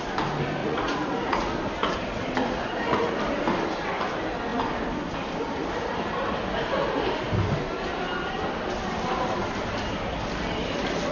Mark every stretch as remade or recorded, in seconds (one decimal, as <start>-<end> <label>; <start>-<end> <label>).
0.0-0.6 recorded; 0.6-1.5 remade; 1.5-2.4 recorded; 2.4-3.1 remade; 3.1-11.1 recorded